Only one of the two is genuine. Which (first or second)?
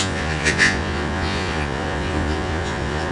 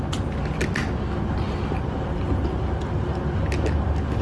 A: second